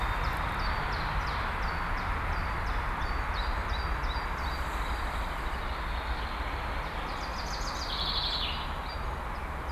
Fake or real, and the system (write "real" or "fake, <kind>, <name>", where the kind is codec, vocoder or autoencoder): real